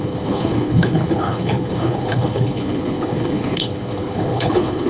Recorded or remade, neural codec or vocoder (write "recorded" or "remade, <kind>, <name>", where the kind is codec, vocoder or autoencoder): remade, codec, HILCodec